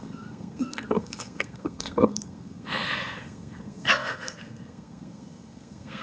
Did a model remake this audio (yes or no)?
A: yes